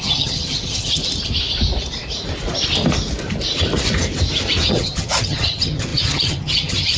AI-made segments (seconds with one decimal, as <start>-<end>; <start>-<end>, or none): 0.0-1.0; 4.7-7.0